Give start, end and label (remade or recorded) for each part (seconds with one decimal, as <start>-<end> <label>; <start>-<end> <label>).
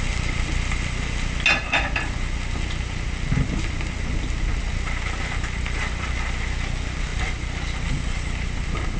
0.0-9.0 recorded